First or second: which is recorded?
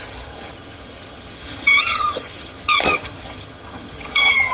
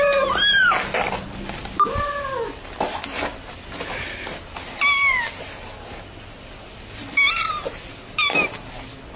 second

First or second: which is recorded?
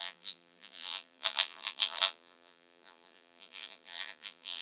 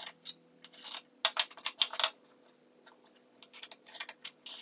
second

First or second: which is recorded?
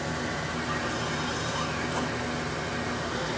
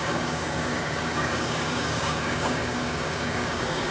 first